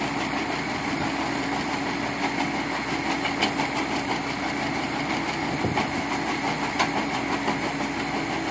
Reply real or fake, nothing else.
real